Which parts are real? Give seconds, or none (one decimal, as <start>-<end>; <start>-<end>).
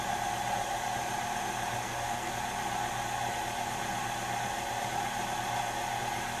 0.0-1.8; 2.3-6.4